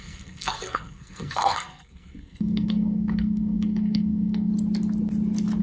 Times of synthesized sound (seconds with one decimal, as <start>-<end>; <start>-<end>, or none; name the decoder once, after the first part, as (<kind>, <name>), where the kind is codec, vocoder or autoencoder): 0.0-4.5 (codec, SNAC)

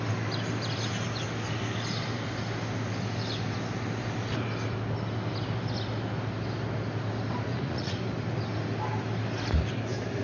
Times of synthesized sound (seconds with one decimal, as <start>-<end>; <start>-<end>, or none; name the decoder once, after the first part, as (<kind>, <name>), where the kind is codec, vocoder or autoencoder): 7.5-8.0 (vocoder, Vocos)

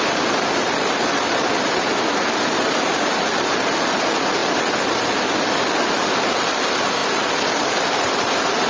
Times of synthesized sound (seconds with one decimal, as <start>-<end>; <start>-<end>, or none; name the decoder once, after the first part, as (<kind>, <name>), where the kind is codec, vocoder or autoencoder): none